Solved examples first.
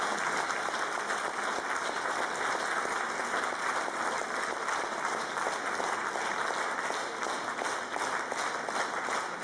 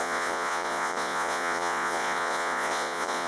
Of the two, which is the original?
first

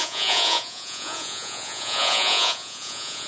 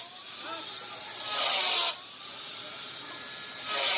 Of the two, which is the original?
second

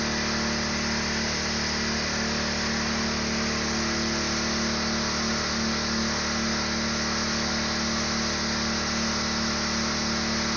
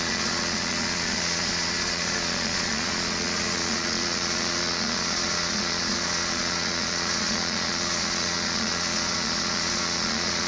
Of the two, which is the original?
first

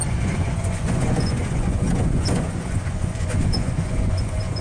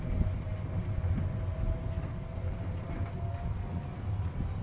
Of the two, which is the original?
second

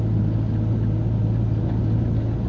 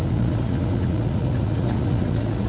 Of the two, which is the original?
first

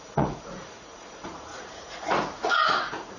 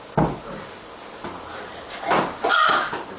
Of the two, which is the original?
second